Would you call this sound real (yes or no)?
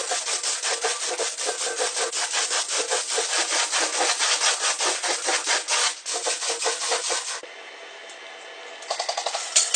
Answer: yes